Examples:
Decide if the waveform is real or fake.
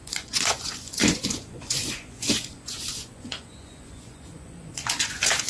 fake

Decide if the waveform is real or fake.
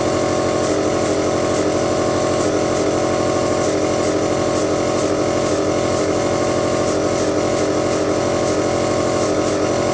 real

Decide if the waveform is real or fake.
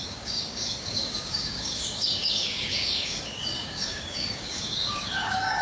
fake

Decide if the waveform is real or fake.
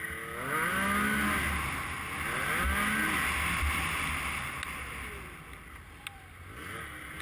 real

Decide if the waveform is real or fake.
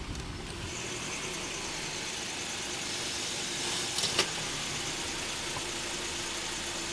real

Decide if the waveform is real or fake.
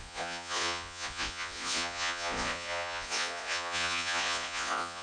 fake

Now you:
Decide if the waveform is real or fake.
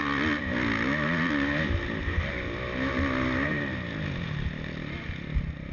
real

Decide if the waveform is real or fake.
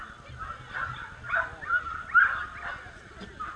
real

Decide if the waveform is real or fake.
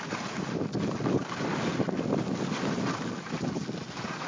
real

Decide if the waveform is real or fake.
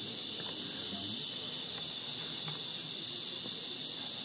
real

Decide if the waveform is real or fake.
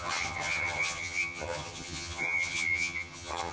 fake